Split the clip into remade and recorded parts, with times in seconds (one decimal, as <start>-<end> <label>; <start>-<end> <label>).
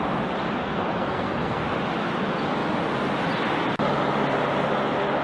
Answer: 0.0-0.6 recorded; 0.6-1.6 remade; 1.6-5.2 recorded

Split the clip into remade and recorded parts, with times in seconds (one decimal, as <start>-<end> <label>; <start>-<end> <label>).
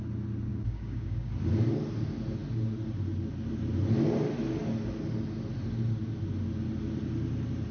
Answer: 0.0-0.5 recorded; 0.5-1.3 remade; 1.3-7.7 recorded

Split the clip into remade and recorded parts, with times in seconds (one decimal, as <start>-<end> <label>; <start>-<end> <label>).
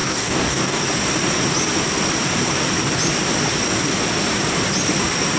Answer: 0.0-0.8 remade; 0.8-5.4 recorded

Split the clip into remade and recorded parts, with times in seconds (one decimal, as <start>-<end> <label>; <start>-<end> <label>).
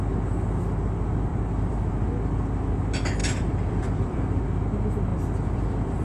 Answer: 0.0-1.3 recorded; 1.3-1.9 remade; 1.9-3.2 recorded; 3.2-4.4 remade; 4.4-5.1 recorded; 5.1-6.0 remade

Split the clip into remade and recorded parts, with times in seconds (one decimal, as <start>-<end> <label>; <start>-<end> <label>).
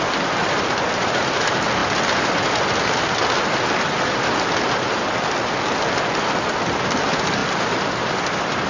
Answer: 0.0-8.7 recorded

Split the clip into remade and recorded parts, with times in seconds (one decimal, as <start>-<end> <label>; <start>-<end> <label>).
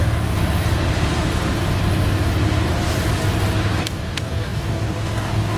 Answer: 0.0-0.4 remade; 0.4-3.8 recorded; 3.8-5.6 remade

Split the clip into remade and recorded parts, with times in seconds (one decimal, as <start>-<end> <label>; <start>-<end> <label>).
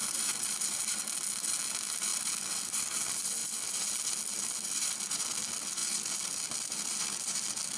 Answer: 0.0-7.8 recorded